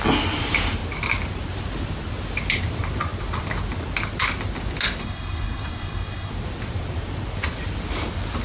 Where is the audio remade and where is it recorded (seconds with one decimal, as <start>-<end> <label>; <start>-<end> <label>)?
0.0-5.0 recorded; 5.0-6.3 remade; 6.3-8.4 recorded